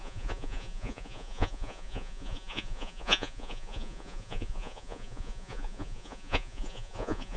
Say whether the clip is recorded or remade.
remade